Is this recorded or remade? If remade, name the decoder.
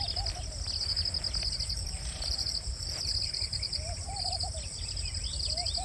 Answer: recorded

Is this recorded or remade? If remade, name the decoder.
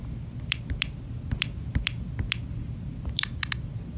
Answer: recorded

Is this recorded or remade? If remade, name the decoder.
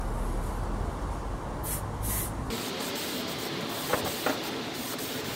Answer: recorded